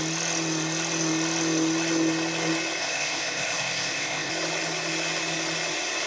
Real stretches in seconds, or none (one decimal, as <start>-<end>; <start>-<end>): 0.0-2.8; 4.3-6.1